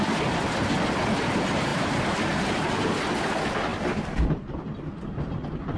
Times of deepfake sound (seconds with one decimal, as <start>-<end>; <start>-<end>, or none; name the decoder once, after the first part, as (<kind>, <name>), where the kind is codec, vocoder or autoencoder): 1.7-3.0 (vocoder, BigVGAN v2); 3.7-4.8